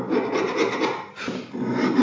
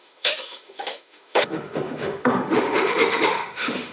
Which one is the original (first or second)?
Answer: first